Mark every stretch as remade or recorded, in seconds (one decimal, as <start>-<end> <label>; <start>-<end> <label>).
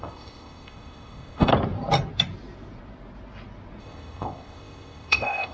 0.0-1.5 remade; 1.5-3.8 recorded; 3.8-5.5 remade